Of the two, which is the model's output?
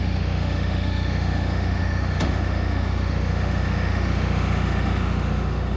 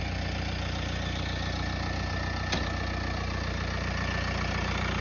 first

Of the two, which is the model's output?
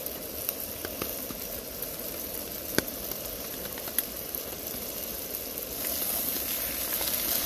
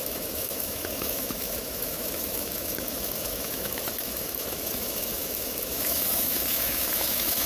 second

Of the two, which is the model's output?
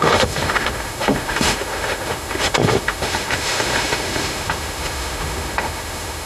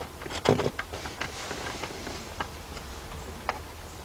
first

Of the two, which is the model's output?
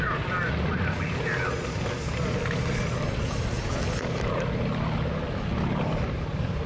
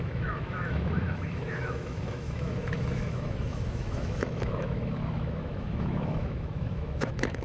second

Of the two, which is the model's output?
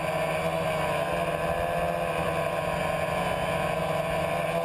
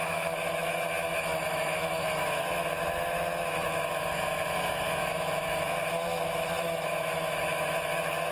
second